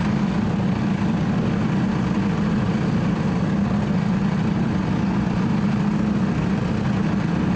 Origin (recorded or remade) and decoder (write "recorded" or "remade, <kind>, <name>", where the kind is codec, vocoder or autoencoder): recorded